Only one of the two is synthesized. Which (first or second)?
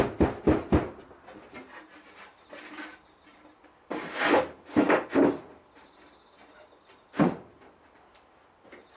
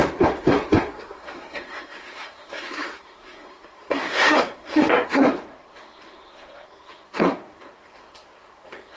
second